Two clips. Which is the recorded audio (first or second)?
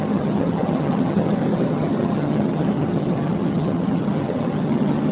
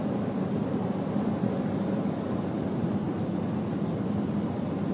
second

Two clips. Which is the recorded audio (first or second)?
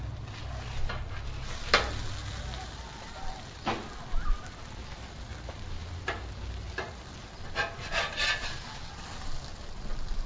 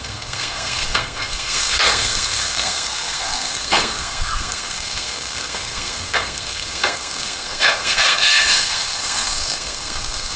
first